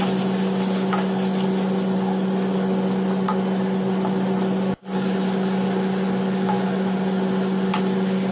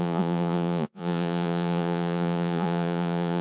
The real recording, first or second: first